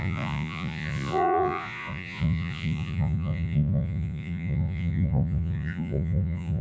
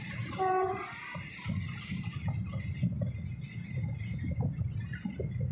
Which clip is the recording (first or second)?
second